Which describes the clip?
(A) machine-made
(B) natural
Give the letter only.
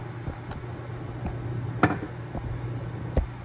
B